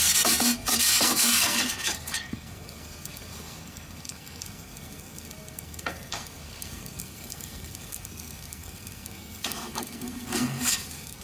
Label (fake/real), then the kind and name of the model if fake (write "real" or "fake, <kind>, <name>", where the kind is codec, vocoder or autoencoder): fake, codec, SNAC